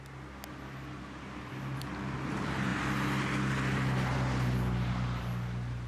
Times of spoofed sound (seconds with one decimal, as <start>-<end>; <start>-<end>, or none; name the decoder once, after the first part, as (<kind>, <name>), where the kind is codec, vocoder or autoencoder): none